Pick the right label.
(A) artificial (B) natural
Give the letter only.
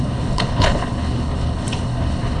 A